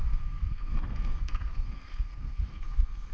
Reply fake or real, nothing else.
fake